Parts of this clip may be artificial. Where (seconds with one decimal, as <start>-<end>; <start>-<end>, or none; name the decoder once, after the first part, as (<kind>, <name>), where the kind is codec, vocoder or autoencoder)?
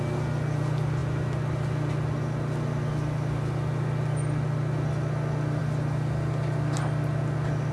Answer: none